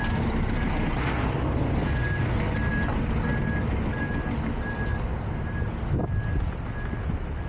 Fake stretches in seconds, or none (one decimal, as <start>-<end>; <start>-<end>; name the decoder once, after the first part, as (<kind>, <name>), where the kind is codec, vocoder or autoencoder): none

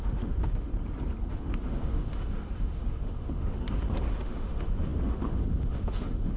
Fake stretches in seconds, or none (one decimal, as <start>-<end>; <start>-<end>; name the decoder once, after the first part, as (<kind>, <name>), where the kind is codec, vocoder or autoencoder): 0.0-0.7 (autoencoder, DAC-VAE); 1.3-6.4

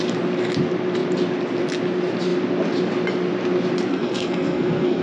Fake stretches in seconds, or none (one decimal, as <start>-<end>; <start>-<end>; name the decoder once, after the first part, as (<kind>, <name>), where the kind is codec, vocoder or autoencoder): 3.9-5.0 (codec, SNAC)

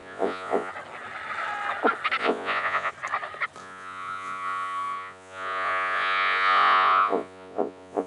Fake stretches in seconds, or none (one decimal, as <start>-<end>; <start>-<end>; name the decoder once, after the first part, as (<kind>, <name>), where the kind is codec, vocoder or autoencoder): 0.0-0.7 (vocoder, Vocos); 2.2-2.9; 3.6-8.1